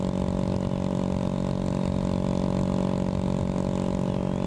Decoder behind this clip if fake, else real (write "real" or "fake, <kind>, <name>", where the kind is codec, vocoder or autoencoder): real